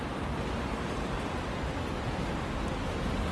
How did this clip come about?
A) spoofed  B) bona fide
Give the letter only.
B